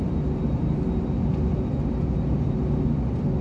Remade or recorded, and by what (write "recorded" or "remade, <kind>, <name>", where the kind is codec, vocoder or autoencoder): recorded